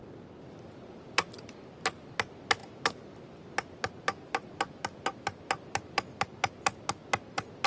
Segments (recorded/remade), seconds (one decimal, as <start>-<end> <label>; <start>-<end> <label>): 0.0-7.7 recorded